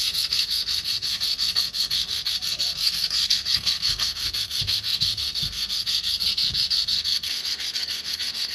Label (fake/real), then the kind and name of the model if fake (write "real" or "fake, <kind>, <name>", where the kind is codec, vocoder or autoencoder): fake, codec, SNAC